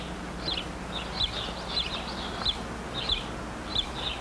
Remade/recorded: recorded